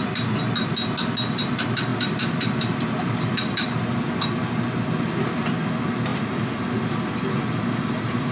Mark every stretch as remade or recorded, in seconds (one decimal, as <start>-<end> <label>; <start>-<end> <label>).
0.0-1.9 recorded; 1.9-3.8 remade; 3.8-6.1 recorded; 6.1-7.1 remade; 7.1-8.3 recorded